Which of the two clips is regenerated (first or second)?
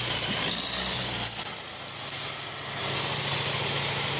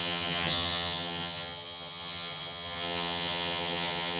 second